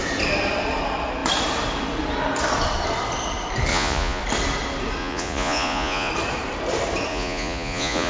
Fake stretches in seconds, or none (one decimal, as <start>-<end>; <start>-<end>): 3.7-4.2; 5.0-6.1; 7.1-8.1